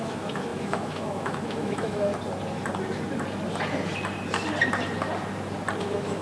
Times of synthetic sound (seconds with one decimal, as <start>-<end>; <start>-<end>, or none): 0.0-2.1; 5.8-6.2